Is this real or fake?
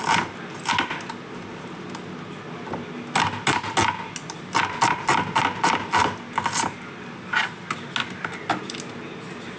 real